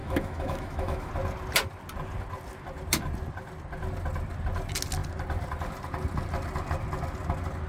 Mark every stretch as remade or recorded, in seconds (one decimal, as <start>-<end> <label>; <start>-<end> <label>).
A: 0.0-1.1 remade; 1.1-7.7 recorded